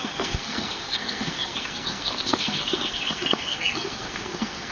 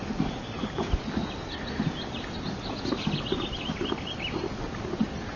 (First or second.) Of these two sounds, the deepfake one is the first